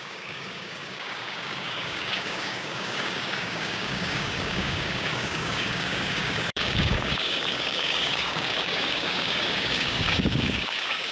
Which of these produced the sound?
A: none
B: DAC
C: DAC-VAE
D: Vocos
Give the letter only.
B